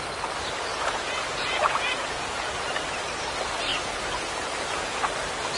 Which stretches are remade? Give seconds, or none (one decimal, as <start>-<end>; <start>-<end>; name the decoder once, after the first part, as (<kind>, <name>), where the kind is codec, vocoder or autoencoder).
0.7-2.5 (vocoder, Vocos); 3.7-5.0